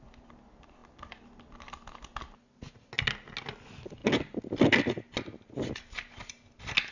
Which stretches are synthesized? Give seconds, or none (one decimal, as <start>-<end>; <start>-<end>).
none